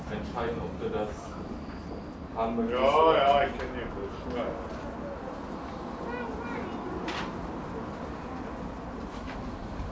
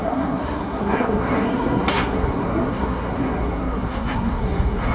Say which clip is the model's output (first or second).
second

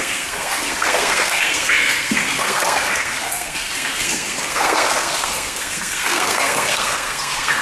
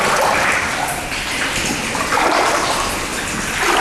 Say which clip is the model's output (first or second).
first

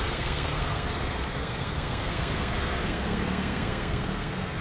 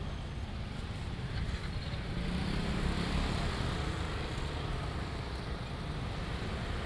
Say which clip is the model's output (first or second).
first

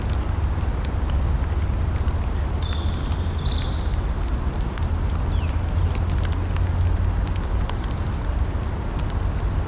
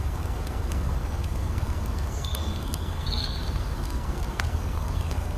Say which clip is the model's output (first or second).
second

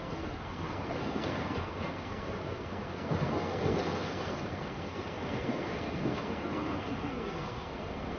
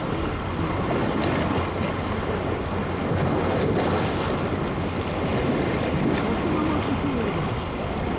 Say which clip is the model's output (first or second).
first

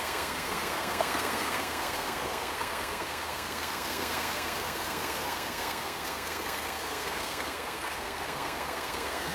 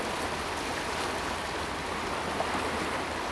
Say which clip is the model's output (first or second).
first